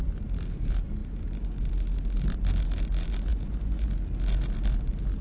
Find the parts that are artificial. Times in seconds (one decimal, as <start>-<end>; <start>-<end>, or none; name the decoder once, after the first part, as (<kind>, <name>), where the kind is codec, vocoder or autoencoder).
3.3-3.9 (vocoder, Vocos)